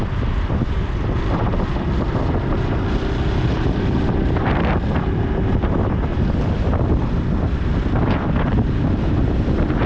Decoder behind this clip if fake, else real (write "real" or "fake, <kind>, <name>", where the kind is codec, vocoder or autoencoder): real